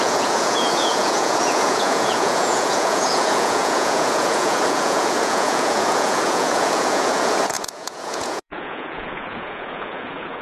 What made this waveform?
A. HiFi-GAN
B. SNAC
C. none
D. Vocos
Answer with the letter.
D